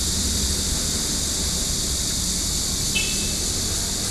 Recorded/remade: recorded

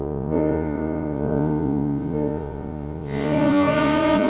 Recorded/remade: remade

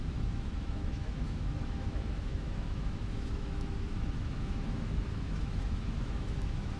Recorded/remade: remade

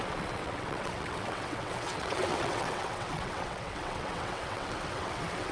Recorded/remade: remade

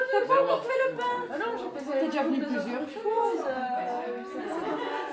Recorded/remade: recorded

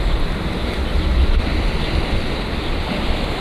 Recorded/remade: recorded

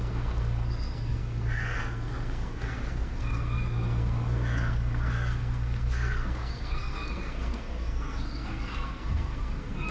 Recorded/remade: remade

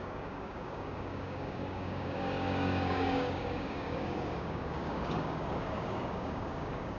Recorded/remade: remade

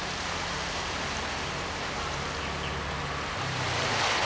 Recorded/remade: recorded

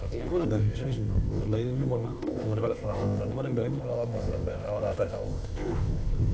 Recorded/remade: remade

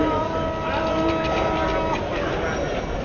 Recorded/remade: recorded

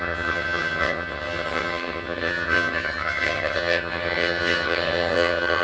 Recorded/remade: remade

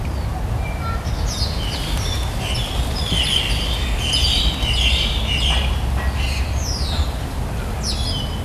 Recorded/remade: recorded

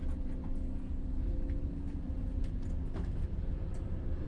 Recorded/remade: recorded